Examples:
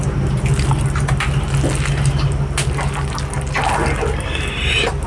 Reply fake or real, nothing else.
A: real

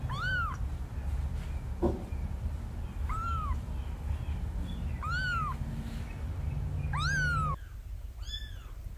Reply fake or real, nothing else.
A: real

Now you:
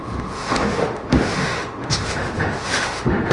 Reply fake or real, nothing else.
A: fake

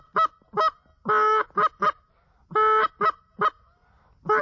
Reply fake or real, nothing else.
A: real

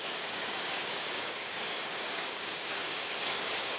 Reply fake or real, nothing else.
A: fake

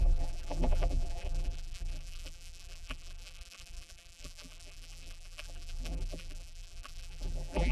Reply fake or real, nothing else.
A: fake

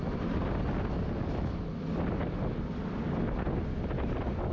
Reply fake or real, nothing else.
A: real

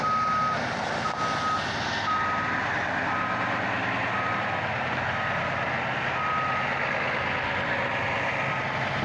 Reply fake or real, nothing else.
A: real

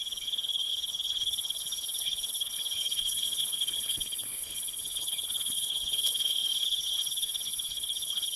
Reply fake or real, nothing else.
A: fake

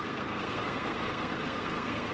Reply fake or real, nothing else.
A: fake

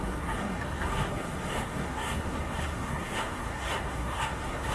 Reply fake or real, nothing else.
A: fake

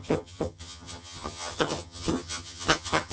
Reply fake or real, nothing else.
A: fake